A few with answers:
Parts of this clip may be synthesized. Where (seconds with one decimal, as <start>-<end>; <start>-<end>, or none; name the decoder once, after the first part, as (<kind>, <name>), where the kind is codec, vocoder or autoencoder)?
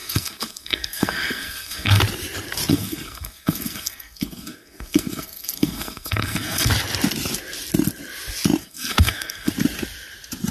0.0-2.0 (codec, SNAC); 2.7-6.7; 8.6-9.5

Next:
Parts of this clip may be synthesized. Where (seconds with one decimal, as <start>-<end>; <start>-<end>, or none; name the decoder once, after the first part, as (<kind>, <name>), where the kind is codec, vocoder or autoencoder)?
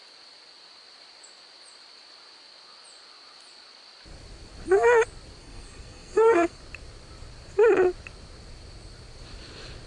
5.4-6.6 (codec, SNAC)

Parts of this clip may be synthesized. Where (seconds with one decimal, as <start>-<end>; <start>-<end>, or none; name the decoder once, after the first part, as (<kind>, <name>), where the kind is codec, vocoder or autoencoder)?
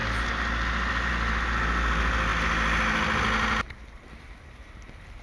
none